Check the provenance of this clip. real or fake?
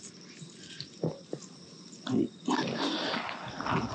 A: real